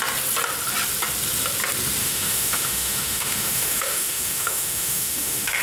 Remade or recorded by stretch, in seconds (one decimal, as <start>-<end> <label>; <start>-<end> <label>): 0.0-2.0 recorded; 2.0-5.6 remade